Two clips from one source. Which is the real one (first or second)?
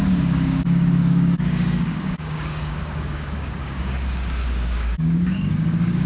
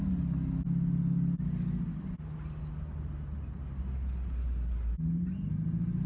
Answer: second